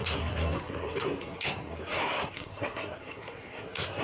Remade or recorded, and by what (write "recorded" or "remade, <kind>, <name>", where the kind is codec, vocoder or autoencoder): remade, codec, SNAC